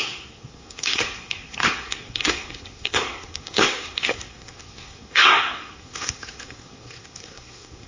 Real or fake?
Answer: fake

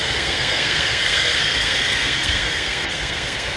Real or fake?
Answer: fake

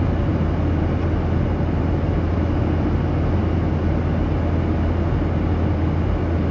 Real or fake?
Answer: real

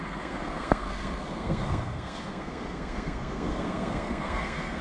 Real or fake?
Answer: fake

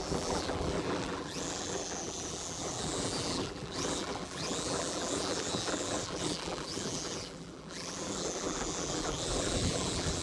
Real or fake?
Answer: fake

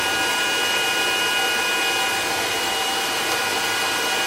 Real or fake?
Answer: real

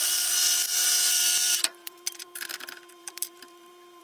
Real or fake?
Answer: fake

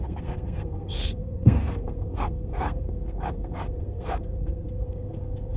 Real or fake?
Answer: fake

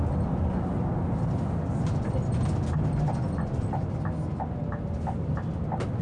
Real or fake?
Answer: real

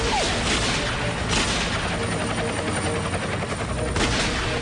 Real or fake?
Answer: real